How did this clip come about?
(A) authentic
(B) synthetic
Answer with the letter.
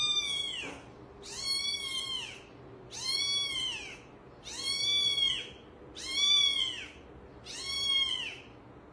A